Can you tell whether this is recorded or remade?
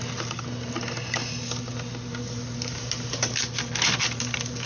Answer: recorded